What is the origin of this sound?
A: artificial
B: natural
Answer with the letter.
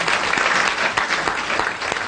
B